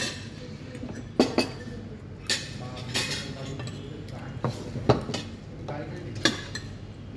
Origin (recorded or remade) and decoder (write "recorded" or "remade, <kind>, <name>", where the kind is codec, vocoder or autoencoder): recorded